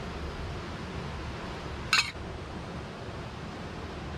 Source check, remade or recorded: recorded